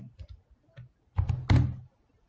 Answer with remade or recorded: recorded